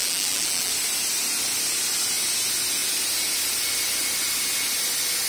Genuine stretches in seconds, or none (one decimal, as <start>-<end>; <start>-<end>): 0.7-5.3